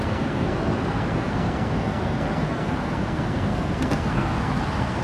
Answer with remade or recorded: remade